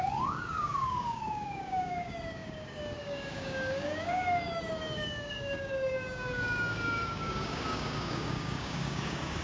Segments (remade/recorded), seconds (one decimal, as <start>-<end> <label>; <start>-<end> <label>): 0.0-9.4 remade